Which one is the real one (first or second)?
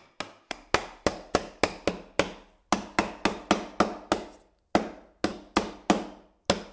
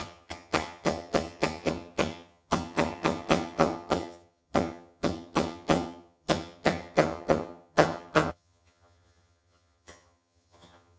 first